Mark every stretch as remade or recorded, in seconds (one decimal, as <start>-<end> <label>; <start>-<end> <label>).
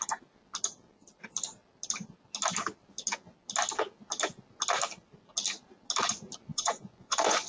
0.0-6.5 recorded; 6.5-7.5 remade